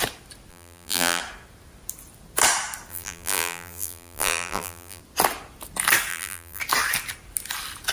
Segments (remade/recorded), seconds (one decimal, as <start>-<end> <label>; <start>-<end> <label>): 0.0-0.5 recorded; 0.5-1.2 remade; 1.2-2.9 recorded; 2.9-5.0 remade; 5.0-6.1 recorded; 6.1-6.6 remade; 6.6-7.9 recorded